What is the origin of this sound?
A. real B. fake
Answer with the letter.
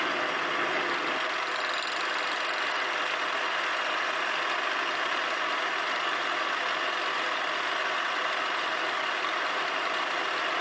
A